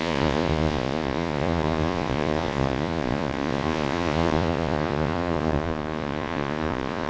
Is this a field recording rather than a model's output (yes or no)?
no